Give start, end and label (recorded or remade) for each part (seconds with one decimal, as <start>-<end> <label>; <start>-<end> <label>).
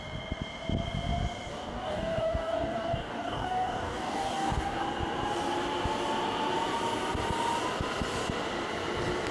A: 0.0-1.5 recorded; 1.5-4.8 remade; 4.8-9.3 recorded